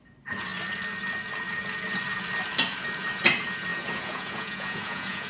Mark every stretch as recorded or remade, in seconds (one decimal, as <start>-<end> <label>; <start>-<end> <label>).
0.0-3.7 recorded; 3.7-5.3 remade

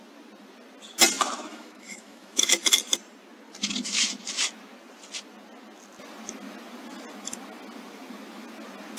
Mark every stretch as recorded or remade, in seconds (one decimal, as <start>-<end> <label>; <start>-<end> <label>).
0.0-1.5 recorded; 1.5-2.5 remade; 2.5-9.0 recorded

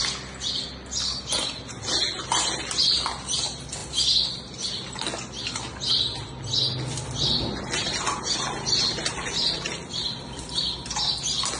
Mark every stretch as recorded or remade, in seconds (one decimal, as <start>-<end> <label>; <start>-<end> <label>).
0.0-11.6 recorded

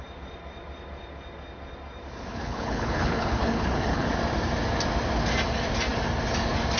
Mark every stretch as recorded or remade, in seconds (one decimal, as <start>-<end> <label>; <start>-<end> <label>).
0.0-2.3 recorded; 2.3-4.1 remade; 4.1-6.8 recorded

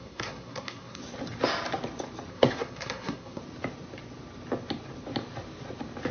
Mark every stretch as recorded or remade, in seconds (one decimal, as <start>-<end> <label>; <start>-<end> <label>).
0.0-1.0 remade; 1.0-2.3 recorded; 2.3-3.4 remade; 3.4-6.1 recorded

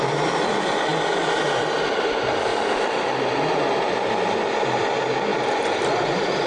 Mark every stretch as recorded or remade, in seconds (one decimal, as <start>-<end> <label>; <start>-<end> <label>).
0.0-2.5 recorded; 2.5-3.0 remade; 3.0-5.3 recorded; 5.3-5.9 remade; 5.9-6.5 recorded

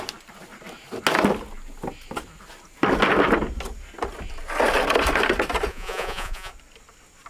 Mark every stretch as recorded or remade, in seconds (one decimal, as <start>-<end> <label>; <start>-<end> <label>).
0.0-5.7 recorded; 5.7-6.5 remade; 6.5-7.3 recorded

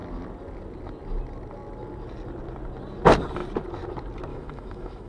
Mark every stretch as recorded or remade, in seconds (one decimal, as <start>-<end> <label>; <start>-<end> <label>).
0.0-4.3 recorded; 4.3-5.1 remade